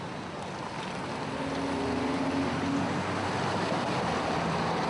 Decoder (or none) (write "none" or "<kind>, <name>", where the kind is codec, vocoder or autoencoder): none